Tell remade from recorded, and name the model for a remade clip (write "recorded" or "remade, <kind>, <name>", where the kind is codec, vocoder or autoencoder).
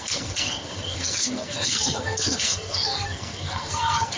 remade, codec, SNAC